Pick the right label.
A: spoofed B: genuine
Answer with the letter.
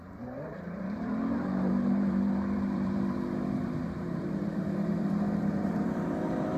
A